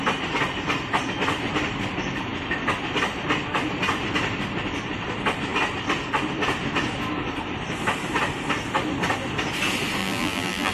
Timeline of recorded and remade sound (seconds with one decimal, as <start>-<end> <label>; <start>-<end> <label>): 0.0-10.0 recorded; 10.0-10.7 remade